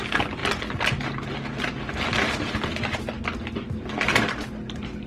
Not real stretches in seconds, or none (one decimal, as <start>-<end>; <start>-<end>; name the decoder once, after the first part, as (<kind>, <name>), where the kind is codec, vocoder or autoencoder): none